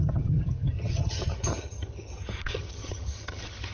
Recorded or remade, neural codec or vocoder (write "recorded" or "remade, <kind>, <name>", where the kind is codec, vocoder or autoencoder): remade, vocoder, HiFi-GAN